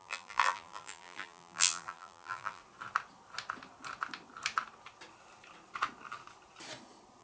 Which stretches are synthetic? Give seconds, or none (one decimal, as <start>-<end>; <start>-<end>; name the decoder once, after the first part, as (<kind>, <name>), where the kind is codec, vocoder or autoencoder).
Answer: 0.0-2.6 (vocoder, BigVGAN v2)